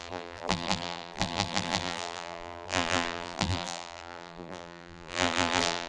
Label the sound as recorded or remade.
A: remade